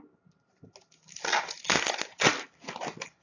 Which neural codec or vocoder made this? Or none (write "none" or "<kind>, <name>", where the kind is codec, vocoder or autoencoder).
none